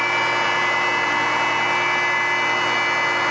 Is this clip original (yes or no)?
yes